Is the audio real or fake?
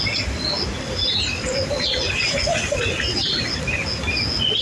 real